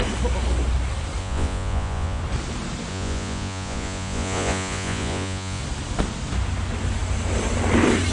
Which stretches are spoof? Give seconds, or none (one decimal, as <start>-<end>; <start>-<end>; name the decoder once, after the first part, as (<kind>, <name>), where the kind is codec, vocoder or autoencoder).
1.2-2.2 (vocoder, Vocos); 2.9-5.6